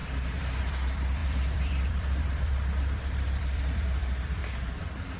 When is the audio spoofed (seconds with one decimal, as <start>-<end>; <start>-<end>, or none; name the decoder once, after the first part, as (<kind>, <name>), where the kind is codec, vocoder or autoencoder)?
0.0-4.4 (vocoder, BigVGAN v2)